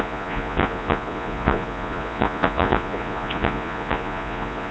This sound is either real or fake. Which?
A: fake